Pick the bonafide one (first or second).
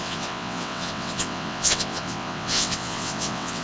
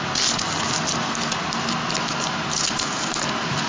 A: second